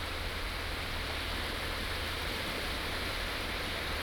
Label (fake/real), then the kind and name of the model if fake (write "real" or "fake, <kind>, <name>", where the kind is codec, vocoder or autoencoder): fake, vocoder, BigVGAN v2